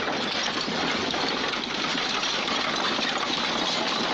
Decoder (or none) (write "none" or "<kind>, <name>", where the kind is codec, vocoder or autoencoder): none